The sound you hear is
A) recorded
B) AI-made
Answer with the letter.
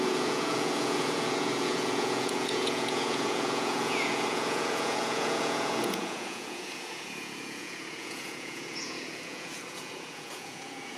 B